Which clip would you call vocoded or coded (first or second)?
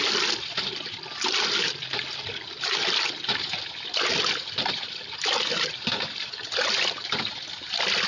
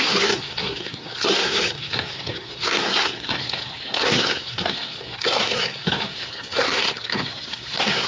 second